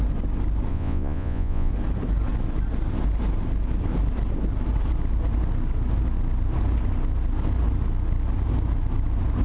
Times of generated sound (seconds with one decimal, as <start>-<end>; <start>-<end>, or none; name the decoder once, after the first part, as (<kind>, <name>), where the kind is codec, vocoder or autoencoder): 0.7-1.7 (vocoder, Vocos)